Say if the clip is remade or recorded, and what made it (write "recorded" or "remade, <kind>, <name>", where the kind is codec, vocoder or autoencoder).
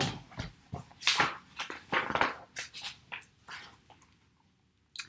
recorded